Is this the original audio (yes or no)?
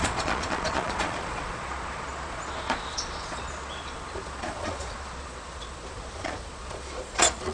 no